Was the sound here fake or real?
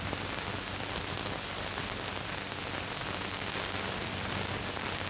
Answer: real